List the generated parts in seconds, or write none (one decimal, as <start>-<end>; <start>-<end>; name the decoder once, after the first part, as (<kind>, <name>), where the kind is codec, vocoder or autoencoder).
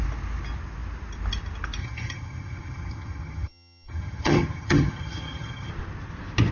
1.8-5.7 (vocoder, HiFi-GAN)